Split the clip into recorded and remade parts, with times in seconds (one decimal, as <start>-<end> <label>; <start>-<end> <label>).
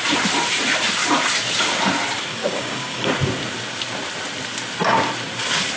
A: 0.0-2.3 recorded; 2.3-3.1 remade; 3.1-5.8 recorded